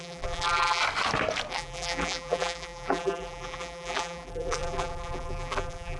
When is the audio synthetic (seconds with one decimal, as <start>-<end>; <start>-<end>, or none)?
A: 0.0-0.8; 1.5-6.0

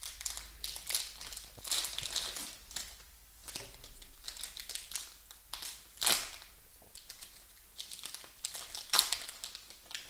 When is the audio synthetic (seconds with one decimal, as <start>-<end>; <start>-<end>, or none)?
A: none

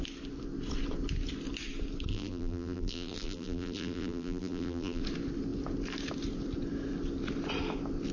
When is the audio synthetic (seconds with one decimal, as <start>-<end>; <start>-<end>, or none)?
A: 2.1-5.0

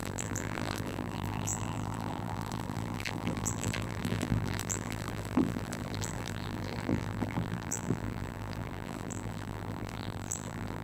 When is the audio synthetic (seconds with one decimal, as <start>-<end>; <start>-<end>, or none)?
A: 0.0-10.8